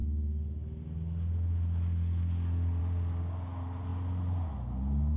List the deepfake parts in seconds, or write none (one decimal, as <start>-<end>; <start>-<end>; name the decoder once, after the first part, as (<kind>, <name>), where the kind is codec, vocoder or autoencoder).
none